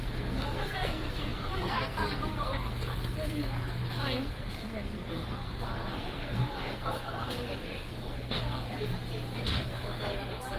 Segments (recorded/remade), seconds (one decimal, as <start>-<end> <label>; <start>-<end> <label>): 0.0-8.9 remade; 8.9-9.5 recorded; 9.5-10.6 remade